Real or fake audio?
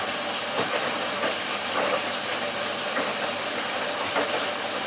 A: real